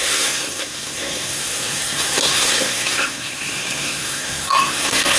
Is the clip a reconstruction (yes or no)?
yes